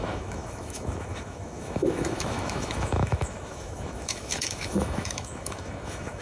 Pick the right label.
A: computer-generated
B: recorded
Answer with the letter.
A